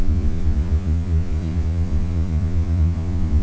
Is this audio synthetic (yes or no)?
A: yes